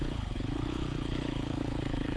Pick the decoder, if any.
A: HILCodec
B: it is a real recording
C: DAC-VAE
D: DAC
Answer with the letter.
A